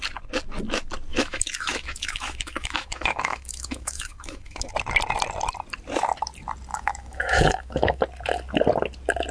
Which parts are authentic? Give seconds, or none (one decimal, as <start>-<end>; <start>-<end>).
0.0-1.1; 4.7-6.7; 8.0-9.3